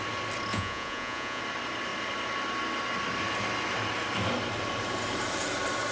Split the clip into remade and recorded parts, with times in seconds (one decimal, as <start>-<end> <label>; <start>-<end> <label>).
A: 0.0-0.5 recorded; 0.5-1.4 remade; 1.4-5.9 recorded